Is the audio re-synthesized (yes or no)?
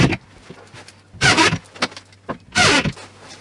no